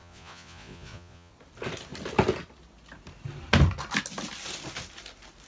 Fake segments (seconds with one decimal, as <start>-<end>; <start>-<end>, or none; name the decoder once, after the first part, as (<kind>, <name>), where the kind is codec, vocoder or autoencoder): 0.0-1.3 (vocoder, Vocos)

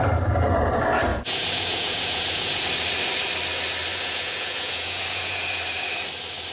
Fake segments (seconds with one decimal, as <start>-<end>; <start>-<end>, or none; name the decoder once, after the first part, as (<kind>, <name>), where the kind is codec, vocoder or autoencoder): 1.1-2.6 (vocoder, Vocos); 3.9-5.6

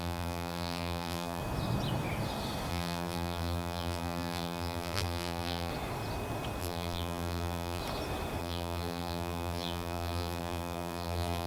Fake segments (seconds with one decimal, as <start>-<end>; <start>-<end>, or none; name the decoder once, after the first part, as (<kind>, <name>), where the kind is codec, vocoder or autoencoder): 0.0-1.4 (vocoder, BigVGAN v2); 2.7-5.7; 6.6-7.8; 8.4-11.5

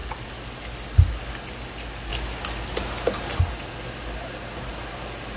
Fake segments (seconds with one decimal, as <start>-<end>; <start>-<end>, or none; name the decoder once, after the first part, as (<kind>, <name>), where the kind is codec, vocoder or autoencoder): none

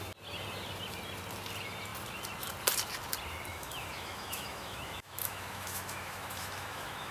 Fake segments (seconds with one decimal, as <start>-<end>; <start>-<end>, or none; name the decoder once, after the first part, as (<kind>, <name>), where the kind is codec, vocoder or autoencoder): 3.5-7.1 (autoencoder, DAC-VAE)

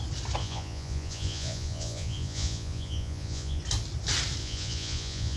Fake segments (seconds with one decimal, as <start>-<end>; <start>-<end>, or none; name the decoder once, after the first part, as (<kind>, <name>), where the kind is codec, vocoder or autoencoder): 0.4-3.6 (vocoder, Vocos); 4.4-5.4